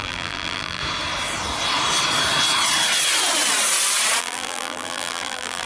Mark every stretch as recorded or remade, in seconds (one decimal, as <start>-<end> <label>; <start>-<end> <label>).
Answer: 0.0-0.8 remade; 0.8-4.2 recorded; 4.2-5.7 remade